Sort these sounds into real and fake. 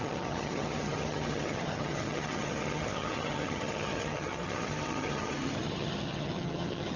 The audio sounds fake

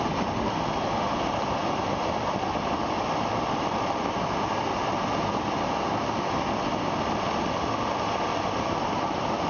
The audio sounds real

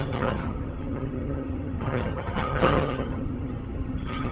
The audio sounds fake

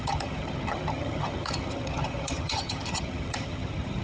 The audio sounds fake